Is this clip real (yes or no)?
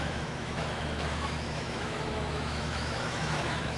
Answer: no